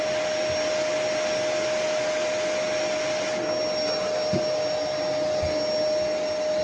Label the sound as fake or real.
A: real